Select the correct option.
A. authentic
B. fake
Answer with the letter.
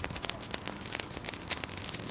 A